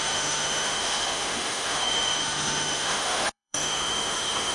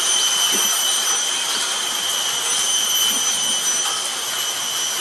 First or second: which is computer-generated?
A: first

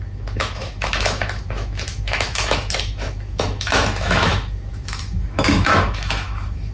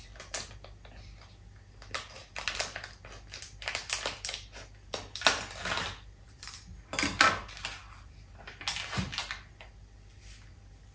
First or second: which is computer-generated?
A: first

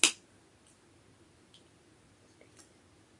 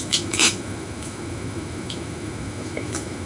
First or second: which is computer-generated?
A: second